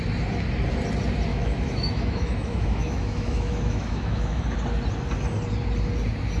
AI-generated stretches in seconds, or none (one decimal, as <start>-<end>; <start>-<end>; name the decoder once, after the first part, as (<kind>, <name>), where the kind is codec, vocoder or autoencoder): 1.3-4.4 (autoencoder, DAC-VAE)